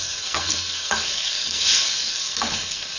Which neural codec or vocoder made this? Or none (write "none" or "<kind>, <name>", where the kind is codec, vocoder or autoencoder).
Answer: codec, SNAC